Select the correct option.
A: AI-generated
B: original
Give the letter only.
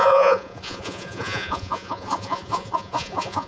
A